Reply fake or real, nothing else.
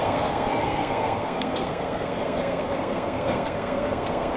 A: fake